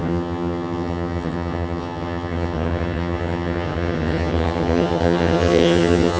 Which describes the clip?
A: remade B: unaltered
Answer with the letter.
A